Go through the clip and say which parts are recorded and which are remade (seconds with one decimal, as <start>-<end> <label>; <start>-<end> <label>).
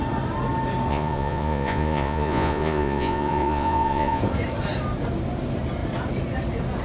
0.0-0.9 recorded; 0.9-4.2 remade; 4.2-6.8 recorded